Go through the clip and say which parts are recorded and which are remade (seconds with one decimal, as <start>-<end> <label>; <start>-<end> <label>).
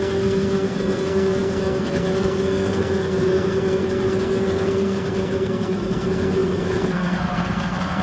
0.0-8.0 remade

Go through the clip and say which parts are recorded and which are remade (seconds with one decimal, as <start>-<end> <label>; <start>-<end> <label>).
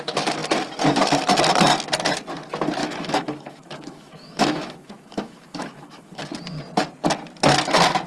0.0-2.8 recorded; 2.8-6.2 remade; 6.2-8.1 recorded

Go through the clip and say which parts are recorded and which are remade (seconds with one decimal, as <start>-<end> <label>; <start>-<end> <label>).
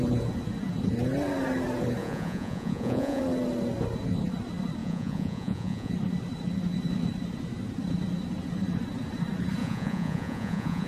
0.0-2.0 recorded; 2.0-3.2 remade; 3.2-4.8 recorded; 4.8-5.9 remade; 5.9-9.6 recorded; 9.6-10.9 remade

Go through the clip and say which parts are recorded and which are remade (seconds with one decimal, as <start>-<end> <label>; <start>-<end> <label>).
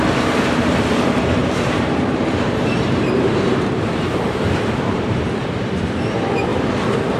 0.0-1.4 recorded; 1.4-5.7 remade; 5.7-6.5 recorded; 6.5-7.2 remade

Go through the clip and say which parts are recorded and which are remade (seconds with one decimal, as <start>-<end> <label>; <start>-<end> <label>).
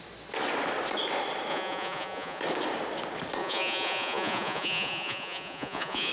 0.0-1.5 recorded; 1.5-2.4 remade; 2.4-3.4 recorded; 3.4-6.1 remade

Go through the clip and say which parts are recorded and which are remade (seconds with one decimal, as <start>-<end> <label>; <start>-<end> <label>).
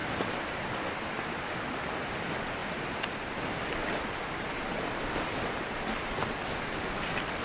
0.0-0.8 remade; 0.8-2.6 recorded; 2.6-7.0 remade; 7.0-7.4 recorded